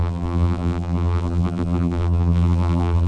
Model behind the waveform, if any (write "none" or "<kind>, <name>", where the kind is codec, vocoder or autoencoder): vocoder, BigVGAN v2